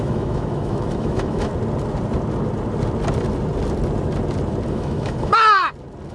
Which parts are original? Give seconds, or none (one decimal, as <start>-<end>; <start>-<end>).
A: 1.5-4.7; 5.3-6.1